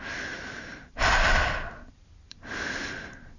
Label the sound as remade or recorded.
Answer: recorded